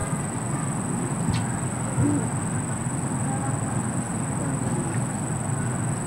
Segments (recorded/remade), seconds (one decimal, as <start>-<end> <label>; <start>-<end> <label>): 0.0-6.1 recorded